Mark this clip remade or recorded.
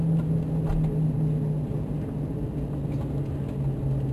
recorded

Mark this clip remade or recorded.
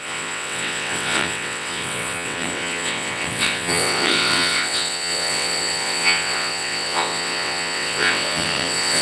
remade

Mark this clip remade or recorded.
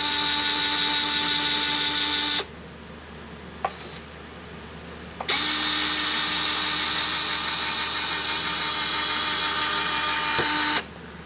recorded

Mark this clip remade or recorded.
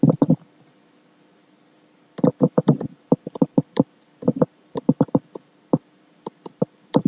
remade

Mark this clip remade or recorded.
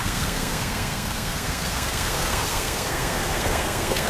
remade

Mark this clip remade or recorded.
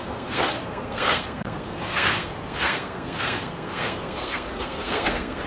remade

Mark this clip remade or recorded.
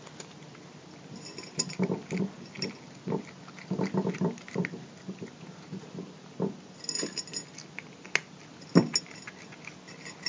recorded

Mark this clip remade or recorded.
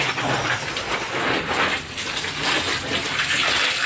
recorded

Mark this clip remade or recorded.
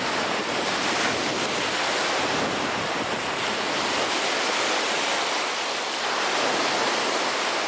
recorded